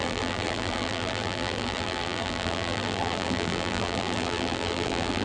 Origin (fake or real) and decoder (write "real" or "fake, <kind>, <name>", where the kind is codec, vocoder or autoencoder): fake, vocoder, BigVGAN v2